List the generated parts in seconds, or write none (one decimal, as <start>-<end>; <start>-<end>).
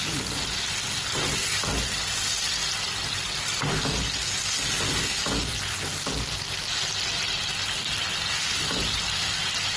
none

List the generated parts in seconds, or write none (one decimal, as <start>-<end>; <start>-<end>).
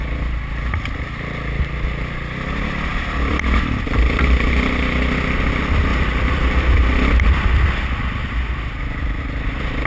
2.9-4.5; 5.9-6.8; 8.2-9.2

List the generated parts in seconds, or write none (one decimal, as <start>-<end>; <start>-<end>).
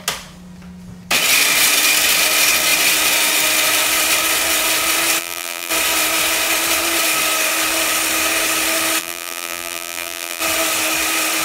5.2-5.7; 9.0-10.4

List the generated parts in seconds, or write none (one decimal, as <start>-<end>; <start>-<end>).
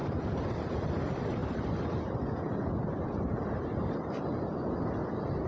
0.7-5.5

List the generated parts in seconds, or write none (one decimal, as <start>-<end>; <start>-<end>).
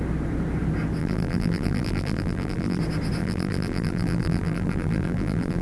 1.0-2.8; 3.2-5.6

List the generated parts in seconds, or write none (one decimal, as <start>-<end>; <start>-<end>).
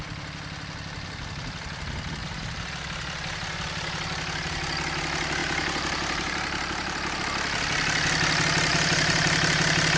2.2-2.7; 5.4-7.2; 8.7-10.0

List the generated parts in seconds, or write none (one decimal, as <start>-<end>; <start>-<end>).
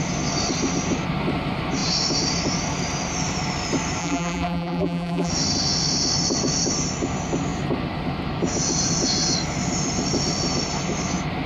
4.0-5.3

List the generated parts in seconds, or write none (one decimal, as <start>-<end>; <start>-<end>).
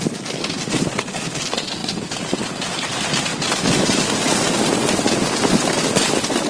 none